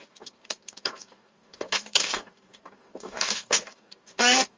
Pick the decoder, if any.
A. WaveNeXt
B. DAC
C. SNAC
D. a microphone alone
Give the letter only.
B